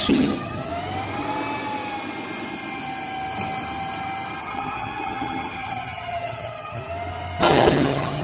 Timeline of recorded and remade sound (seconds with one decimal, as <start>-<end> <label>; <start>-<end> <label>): 0.0-0.7 remade; 0.7-4.4 recorded; 4.4-6.8 remade; 6.8-7.4 recorded; 7.4-8.2 remade